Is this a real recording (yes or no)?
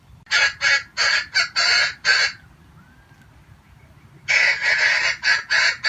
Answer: yes